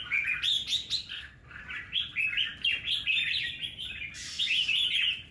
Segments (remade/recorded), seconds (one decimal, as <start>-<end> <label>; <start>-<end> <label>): 0.0-1.1 recorded; 1.1-1.6 remade; 1.6-5.3 recorded